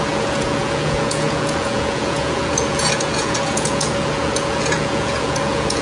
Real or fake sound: fake